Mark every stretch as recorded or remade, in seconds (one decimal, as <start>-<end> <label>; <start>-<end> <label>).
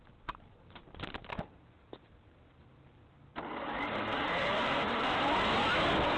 0.0-4.4 recorded; 4.4-5.2 remade; 5.2-6.2 recorded